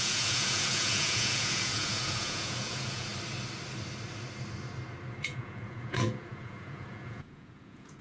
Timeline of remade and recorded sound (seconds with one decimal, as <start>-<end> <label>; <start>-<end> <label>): 0.0-3.1 remade; 3.1-5.2 recorded; 5.2-8.0 remade